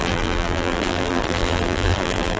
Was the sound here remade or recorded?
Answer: remade